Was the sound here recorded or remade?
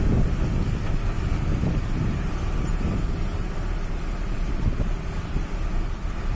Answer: recorded